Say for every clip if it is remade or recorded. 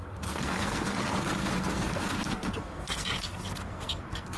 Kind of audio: remade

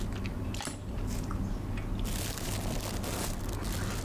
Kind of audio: recorded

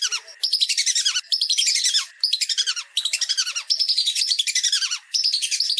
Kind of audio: recorded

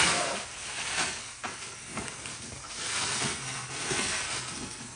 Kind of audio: remade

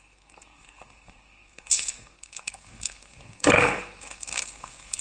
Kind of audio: remade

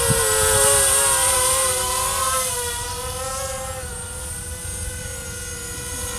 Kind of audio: recorded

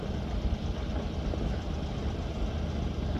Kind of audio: recorded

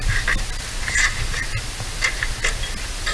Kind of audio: recorded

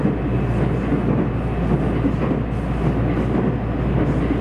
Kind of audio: recorded